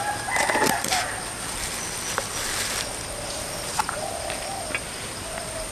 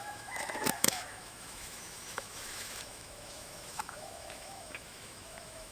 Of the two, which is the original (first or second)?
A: first